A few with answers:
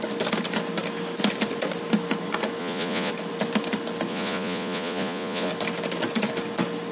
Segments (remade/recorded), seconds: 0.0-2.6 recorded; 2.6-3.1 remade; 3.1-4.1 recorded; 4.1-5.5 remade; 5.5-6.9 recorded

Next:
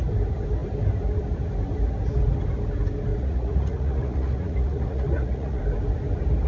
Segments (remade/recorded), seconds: 0.0-3.1 recorded; 3.1-5.6 remade; 5.6-6.5 recorded

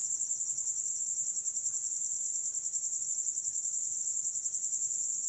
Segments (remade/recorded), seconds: 0.0-1.0 remade; 1.0-5.3 recorded